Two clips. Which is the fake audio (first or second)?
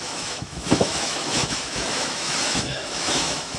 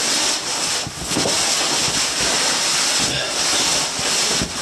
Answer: first